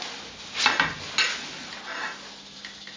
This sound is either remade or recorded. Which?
recorded